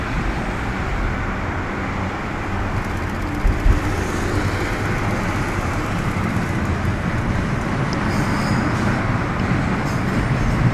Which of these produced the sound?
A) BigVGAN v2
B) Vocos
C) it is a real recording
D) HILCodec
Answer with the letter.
C